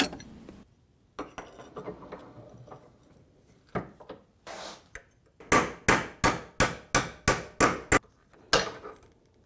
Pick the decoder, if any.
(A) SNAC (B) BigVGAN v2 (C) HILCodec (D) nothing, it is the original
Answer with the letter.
D